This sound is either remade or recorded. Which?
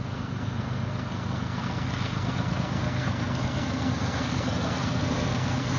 remade